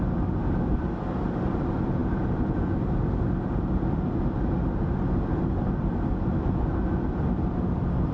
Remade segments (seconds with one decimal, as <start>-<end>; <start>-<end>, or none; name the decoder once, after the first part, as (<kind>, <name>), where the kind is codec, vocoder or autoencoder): none

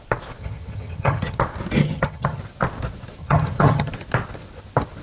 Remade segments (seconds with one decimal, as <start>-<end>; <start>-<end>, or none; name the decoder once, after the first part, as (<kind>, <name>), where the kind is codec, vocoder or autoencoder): 0.4-1.4 (vocoder, HiFi-GAN); 1.8-2.4; 3.2-3.9